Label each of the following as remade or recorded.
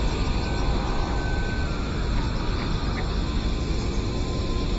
recorded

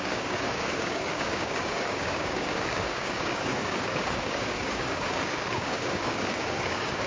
remade